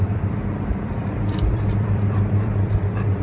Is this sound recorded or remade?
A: remade